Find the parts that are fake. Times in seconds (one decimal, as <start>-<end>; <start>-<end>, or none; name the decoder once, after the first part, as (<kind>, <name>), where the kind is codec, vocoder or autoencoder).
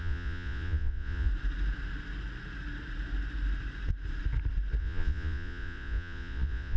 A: 0.0-1.3 (vocoder, Vocos); 4.8-6.8